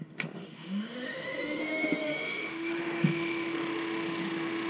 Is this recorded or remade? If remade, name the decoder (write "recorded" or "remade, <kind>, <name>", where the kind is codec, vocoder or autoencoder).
remade, autoencoder, DAC-VAE